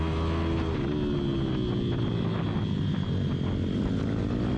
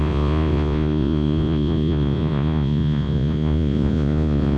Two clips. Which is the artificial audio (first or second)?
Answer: second